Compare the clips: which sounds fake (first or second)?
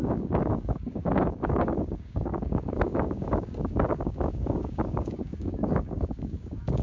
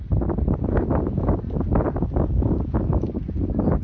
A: first